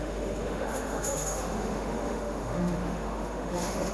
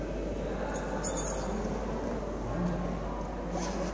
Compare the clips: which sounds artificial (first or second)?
first